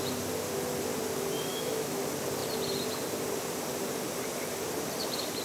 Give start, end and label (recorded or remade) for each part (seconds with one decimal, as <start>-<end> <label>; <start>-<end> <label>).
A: 0.0-1.5 recorded; 1.5-2.0 remade; 2.0-5.4 recorded